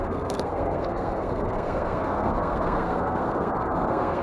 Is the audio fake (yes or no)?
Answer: yes